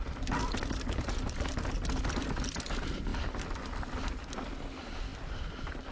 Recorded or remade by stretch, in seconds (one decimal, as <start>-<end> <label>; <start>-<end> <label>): 0.0-5.9 recorded